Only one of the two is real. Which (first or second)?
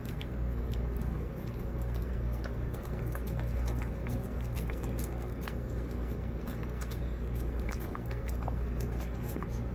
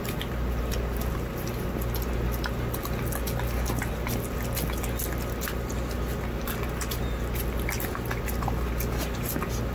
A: second